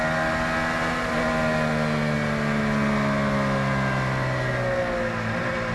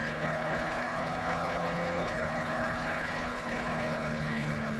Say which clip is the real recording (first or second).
first